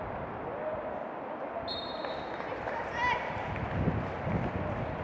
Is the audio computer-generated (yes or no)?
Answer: no